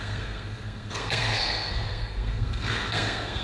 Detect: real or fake fake